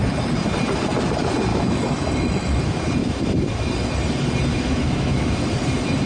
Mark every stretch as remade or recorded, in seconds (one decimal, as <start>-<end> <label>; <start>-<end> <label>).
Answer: 0.0-1.5 recorded; 1.5-2.6 remade; 2.6-3.0 recorded; 3.0-3.7 remade; 3.7-4.5 recorded; 4.5-5.4 remade; 5.4-6.1 recorded